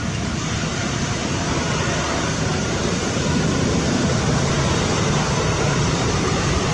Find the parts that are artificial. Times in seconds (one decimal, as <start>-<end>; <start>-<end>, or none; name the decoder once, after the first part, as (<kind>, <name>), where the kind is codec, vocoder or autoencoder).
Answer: 0.7-1.7 (vocoder, BigVGAN v2); 2.5-6.7